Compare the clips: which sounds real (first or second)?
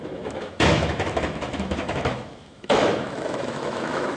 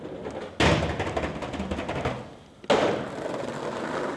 second